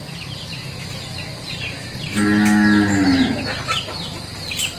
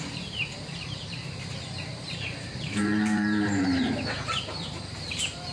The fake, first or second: second